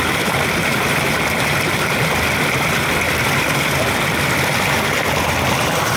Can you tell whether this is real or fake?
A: fake